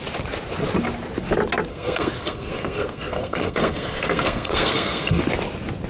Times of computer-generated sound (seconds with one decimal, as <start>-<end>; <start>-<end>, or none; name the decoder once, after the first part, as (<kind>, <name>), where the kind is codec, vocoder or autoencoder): 1.7-5.2 (codec, SNAC)